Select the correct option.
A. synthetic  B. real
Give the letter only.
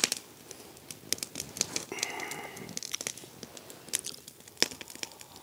B